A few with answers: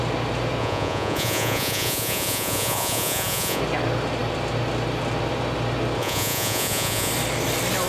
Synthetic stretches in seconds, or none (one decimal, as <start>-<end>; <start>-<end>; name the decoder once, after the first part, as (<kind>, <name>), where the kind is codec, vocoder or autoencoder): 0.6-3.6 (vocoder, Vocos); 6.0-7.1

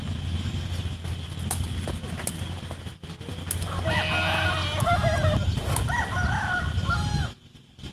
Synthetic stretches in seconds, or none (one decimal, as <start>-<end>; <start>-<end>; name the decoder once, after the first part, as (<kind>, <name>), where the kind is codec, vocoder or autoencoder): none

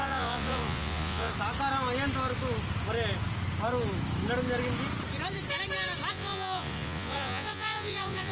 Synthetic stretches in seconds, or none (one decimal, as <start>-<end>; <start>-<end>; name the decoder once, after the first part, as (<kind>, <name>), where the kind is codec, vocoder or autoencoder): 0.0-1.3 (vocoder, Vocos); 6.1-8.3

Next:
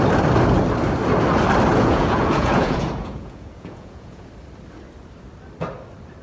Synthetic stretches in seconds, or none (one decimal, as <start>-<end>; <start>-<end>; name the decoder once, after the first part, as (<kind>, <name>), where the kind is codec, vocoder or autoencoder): 1.7-4.3 (vocoder, Vocos)

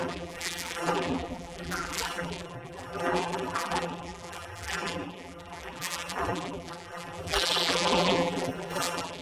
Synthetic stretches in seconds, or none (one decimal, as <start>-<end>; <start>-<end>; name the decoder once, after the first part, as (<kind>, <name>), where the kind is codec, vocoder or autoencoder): 0.0-9.2 (vocoder, BigVGAN v2)